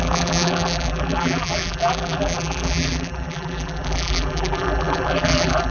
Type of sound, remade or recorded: remade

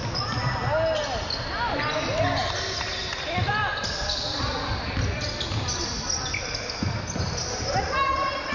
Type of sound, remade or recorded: recorded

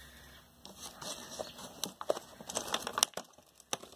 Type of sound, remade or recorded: recorded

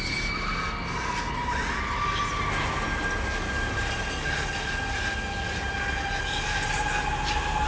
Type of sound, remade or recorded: recorded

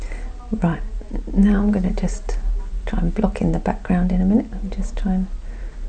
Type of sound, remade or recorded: recorded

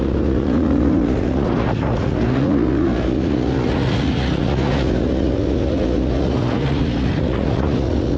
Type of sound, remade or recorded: remade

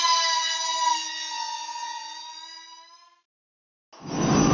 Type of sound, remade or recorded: recorded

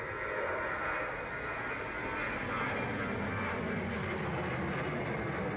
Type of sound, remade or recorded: recorded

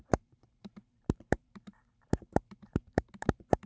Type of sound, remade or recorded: remade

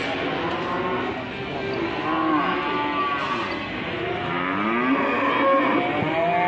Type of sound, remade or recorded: recorded